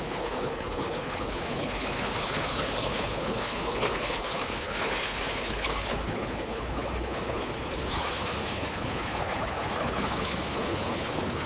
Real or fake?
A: fake